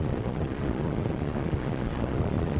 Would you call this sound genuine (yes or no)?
no